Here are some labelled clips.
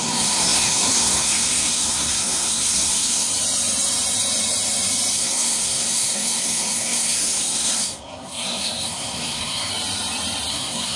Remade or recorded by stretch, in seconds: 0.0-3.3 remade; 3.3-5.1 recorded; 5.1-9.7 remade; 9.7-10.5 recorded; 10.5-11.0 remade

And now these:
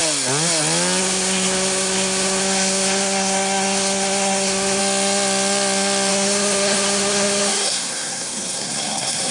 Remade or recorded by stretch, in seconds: 0.0-1.0 recorded; 1.0-4.8 remade; 4.8-6.1 recorded; 6.1-9.3 remade